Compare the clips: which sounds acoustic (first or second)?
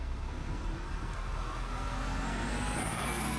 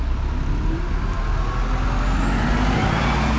second